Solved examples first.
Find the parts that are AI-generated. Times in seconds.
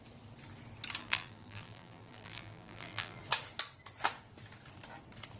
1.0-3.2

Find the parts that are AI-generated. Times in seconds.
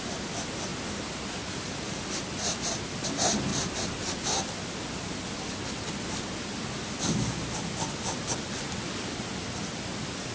none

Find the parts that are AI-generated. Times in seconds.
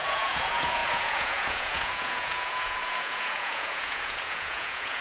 0.0-5.0